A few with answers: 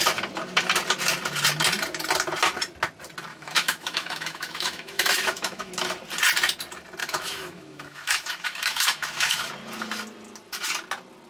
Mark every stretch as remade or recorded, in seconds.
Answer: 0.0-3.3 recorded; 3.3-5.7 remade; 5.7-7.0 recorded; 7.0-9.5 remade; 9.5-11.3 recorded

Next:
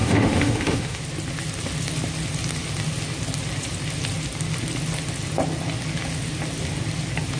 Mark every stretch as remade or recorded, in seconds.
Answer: 0.0-1.0 remade; 1.0-7.4 recorded

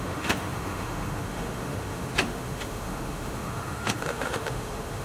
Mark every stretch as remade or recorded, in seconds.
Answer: 0.0-5.0 remade

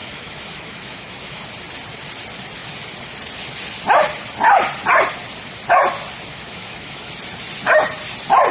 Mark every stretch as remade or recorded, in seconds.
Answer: 0.0-1.4 remade; 1.4-6.3 recorded; 6.3-7.1 remade; 7.1-8.5 recorded

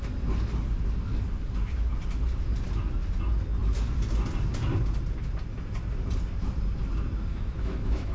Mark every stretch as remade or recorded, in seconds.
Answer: 0.0-7.3 recorded; 7.3-8.1 remade

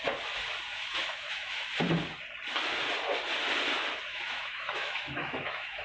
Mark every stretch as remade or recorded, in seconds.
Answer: 0.0-0.7 recorded; 0.7-1.7 remade; 1.7-4.1 recorded; 4.1-5.8 remade